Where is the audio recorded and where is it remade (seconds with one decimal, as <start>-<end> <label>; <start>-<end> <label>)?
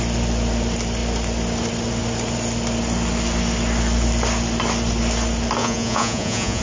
0.0-5.6 recorded; 5.6-6.6 remade